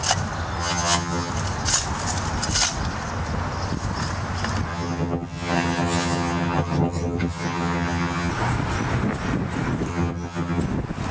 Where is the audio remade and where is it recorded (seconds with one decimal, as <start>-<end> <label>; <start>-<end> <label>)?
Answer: 0.0-0.6 recorded; 0.6-1.3 remade; 1.3-4.7 recorded; 4.7-8.3 remade; 8.3-9.9 recorded; 9.9-10.6 remade; 10.6-11.1 recorded

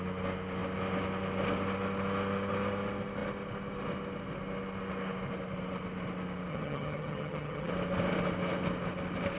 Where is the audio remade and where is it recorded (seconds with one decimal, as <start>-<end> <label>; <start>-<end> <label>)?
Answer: 0.0-6.5 recorded; 6.5-7.7 remade; 7.7-9.4 recorded

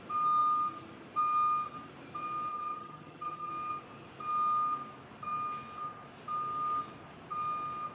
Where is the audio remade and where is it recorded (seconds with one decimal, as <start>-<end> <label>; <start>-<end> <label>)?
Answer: 0.0-2.5 recorded; 2.5-3.5 remade; 3.5-7.9 recorded

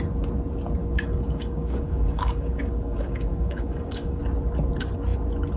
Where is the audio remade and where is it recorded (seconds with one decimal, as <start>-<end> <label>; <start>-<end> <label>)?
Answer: 0.0-0.8 recorded; 0.8-4.2 remade; 4.2-5.6 recorded

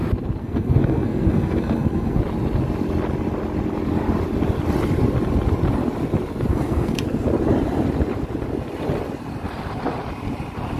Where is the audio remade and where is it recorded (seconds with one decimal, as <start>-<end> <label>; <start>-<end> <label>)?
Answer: 0.0-0.4 recorded; 0.4-2.2 remade; 2.2-6.5 recorded; 6.5-7.0 remade; 7.0-10.8 recorded

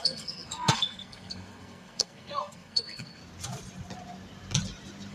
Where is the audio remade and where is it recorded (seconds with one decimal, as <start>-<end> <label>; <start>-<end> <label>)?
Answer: 0.0-3.2 remade; 3.2-5.1 recorded

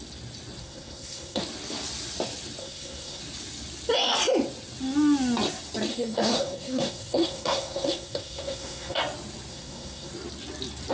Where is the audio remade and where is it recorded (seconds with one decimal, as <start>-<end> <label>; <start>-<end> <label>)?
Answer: 0.0-0.6 recorded; 0.6-1.4 remade; 1.4-2.6 recorded; 2.6-3.2 remade; 3.2-5.9 recorded; 5.9-9.0 remade; 9.0-9.5 recorded; 9.5-10.1 remade; 10.1-10.9 recorded

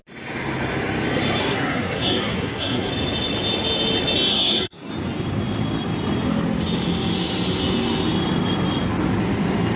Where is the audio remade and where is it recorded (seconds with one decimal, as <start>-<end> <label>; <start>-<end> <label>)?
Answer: 0.0-1.4 recorded; 1.4-2.9 remade; 2.9-4.3 recorded; 4.3-4.9 remade; 4.9-9.8 recorded